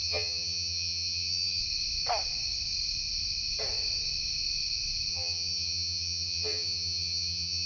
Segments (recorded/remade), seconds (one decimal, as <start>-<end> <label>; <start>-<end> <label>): 0.0-1.6 remade; 1.6-5.1 recorded; 5.1-7.7 remade